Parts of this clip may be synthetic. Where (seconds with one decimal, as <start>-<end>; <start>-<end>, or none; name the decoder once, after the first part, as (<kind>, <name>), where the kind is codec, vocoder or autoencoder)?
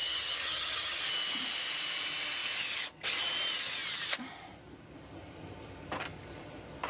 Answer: 0.0-1.0 (vocoder, HiFi-GAN)